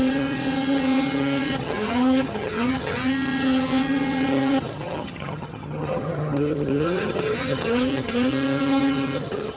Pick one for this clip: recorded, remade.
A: remade